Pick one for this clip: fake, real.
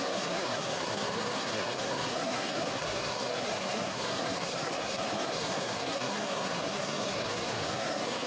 fake